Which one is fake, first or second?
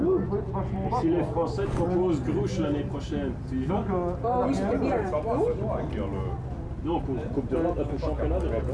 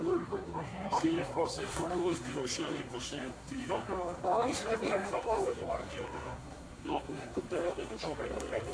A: second